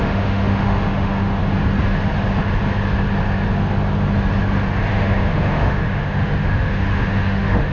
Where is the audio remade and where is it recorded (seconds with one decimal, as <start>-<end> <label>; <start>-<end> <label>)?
0.0-1.4 remade; 1.4-4.9 recorded; 4.9-7.7 remade